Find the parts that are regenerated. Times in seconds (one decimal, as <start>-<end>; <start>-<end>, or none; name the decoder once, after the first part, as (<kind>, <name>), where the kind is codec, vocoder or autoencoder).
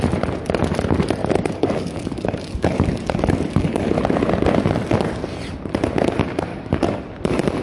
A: 1.2-3.9 (codec, DAC); 6.5-7.0